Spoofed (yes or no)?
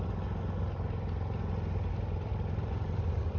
no